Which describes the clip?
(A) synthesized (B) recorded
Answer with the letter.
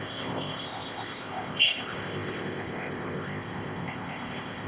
A